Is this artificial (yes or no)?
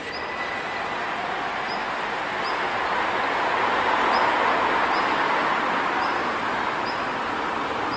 no